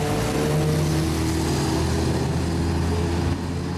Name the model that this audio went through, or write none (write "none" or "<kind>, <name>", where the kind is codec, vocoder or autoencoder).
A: none